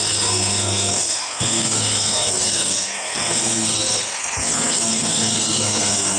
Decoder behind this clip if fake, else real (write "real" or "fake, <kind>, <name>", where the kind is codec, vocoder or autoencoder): fake, codec, SNAC